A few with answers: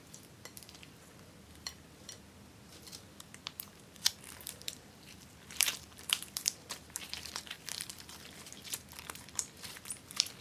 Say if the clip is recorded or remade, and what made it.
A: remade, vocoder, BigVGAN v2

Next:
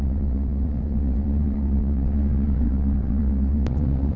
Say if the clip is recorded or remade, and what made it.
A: remade, vocoder, WaveNeXt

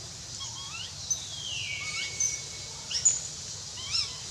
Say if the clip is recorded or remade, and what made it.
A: recorded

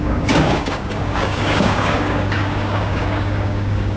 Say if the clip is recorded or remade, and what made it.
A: remade, codec, DAC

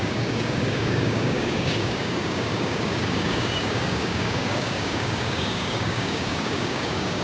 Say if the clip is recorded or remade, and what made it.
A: remade, codec, DAC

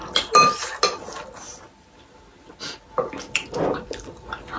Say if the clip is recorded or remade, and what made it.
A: recorded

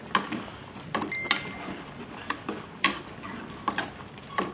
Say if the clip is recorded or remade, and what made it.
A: recorded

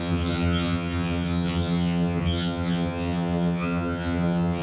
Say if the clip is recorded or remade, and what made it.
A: remade, vocoder, HiFi-GAN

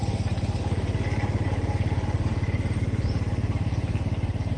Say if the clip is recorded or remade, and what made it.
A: recorded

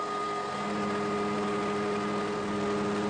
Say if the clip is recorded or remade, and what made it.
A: recorded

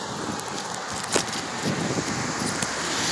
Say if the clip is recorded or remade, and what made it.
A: recorded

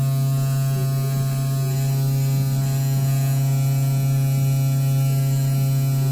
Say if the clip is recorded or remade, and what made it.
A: recorded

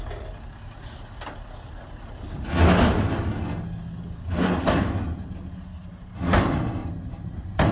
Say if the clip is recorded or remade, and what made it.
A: recorded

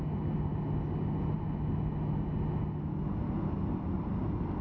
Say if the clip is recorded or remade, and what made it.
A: recorded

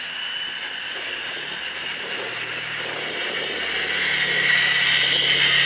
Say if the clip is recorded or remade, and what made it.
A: recorded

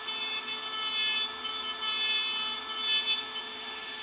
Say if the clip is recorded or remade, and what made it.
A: recorded